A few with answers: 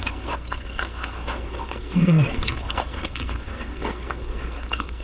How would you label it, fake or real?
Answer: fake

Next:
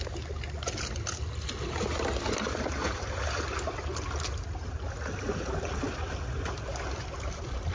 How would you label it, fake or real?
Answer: real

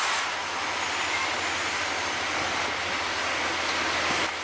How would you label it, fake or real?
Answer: real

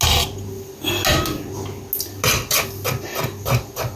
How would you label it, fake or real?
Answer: real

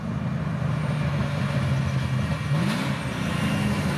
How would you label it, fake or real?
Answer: real